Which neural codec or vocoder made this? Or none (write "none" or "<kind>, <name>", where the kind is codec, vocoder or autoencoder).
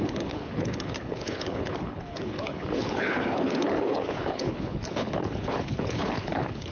codec, HILCodec